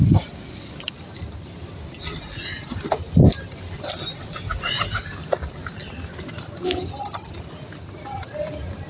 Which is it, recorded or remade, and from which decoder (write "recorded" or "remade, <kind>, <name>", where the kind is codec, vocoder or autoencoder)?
recorded